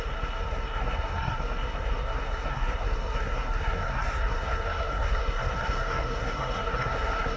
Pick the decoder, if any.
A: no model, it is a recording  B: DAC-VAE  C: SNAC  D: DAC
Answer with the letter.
C